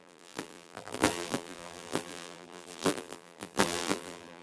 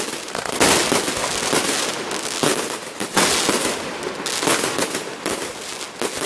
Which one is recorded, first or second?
second